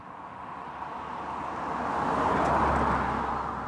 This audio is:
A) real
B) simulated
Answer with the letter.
A